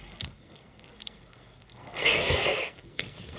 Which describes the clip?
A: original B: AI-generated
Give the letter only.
B